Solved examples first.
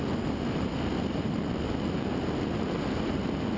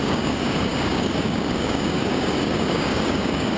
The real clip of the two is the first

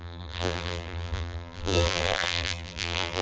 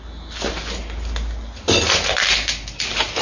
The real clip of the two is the second